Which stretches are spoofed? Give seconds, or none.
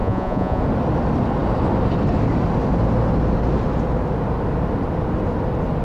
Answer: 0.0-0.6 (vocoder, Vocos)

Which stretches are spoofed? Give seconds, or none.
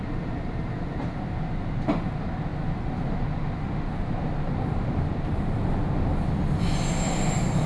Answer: none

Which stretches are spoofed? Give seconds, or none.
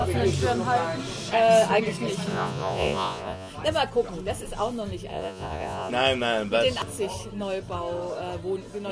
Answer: 2.3-3.5 (vocoder, Vocos); 5.1-5.9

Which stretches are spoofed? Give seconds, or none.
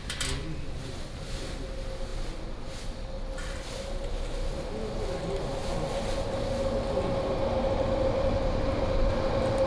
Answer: none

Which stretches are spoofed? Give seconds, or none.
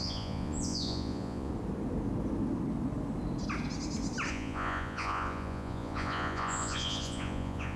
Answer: 0.0-1.5 (vocoder, Vocos); 4.3-7.8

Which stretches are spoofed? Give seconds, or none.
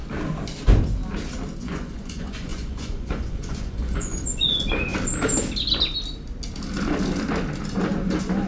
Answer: 1.6-4.9 (vocoder, Vocos)